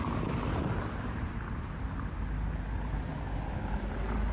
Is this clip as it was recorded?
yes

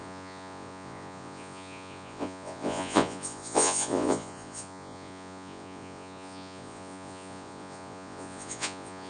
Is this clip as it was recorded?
no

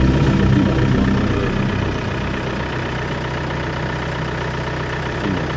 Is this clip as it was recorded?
yes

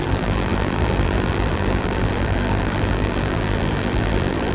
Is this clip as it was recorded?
no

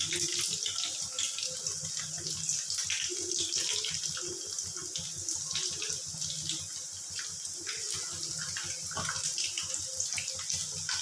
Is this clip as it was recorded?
yes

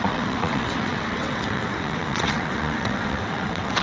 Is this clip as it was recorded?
no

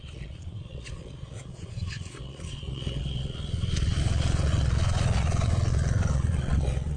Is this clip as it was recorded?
no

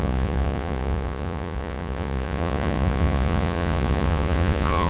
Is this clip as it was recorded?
no